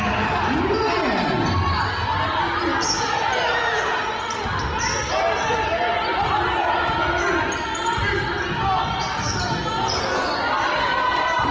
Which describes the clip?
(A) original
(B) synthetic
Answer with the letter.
A